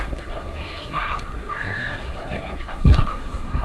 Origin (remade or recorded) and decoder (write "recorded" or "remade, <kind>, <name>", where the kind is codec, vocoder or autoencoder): remade, codec, SNAC